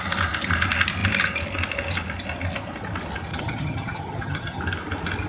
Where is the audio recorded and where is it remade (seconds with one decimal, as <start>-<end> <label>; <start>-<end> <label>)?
0.0-3.3 recorded; 3.3-4.6 remade; 4.6-5.3 recorded